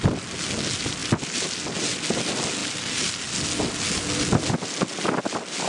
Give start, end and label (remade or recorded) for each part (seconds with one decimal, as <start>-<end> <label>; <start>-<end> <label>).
0.0-5.7 recorded